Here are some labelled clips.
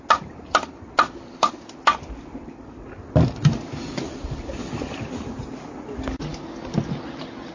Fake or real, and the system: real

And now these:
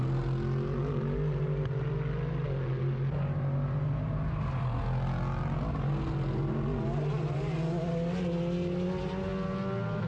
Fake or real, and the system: real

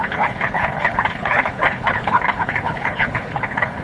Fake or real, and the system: fake, codec, HILCodec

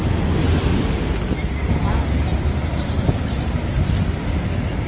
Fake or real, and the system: real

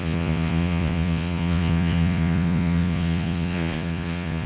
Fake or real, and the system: fake, vocoder, Vocos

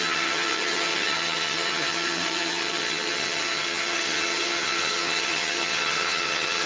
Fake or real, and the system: fake, vocoder, HiFi-GAN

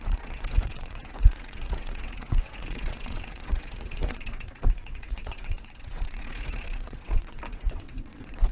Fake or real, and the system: fake, vocoder, WaveNeXt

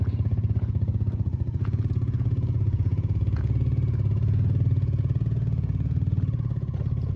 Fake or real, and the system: fake, vocoder, Vocos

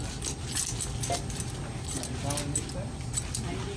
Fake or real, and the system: real